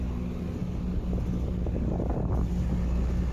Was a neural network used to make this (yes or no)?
no